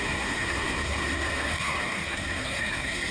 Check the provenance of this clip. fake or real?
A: fake